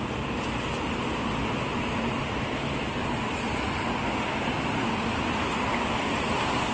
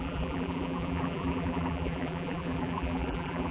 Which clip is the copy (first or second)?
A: second